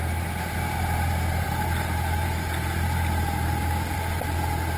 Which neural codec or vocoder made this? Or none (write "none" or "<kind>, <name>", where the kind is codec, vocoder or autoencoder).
none